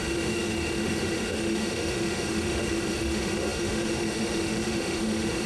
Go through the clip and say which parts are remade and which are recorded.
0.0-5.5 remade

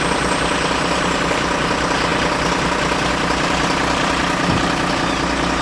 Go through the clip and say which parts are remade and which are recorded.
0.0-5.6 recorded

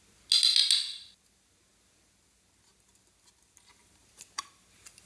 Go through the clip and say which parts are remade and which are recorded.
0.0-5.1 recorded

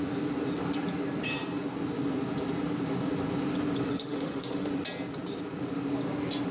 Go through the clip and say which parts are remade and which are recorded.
0.0-3.9 recorded; 3.9-4.7 remade; 4.7-6.5 recorded

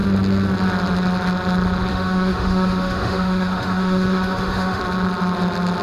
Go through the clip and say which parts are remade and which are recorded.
0.0-1.9 recorded; 1.9-4.8 remade; 4.8-5.8 recorded

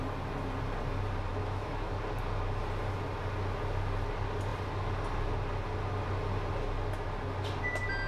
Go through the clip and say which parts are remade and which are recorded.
0.0-1.3 recorded; 1.3-1.9 remade; 1.9-8.1 recorded

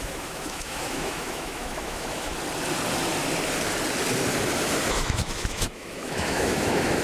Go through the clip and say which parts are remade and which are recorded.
0.0-2.3 remade; 2.3-4.9 recorded; 4.9-7.0 remade